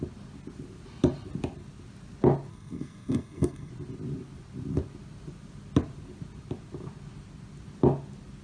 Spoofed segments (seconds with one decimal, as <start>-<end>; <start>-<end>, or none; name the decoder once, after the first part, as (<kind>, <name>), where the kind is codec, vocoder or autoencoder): 2.5-3.7 (codec, SNAC)